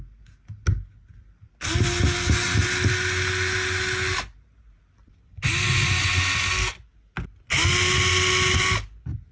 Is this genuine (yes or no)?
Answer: yes